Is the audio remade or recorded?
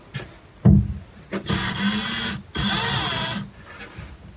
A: recorded